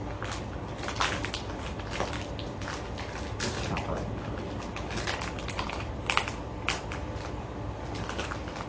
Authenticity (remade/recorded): recorded